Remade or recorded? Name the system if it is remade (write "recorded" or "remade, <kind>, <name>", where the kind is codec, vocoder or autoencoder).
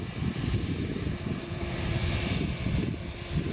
remade, vocoder, BigVGAN v2